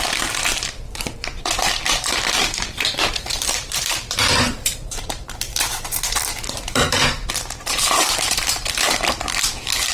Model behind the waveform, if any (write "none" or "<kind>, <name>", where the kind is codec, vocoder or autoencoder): vocoder, BigVGAN v2